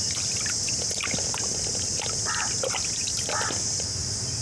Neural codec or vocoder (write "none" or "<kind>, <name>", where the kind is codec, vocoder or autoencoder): none